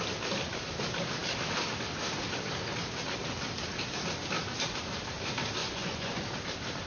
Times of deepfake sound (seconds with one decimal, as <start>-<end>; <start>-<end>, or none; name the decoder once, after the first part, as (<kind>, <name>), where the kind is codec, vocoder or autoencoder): 5.6-6.2 (vocoder, Vocos)